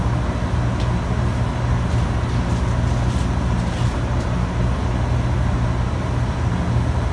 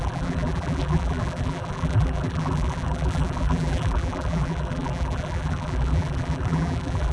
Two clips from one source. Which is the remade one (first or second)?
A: second